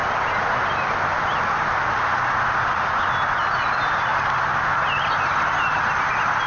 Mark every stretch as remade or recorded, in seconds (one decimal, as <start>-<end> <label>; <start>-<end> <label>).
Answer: 0.0-6.5 recorded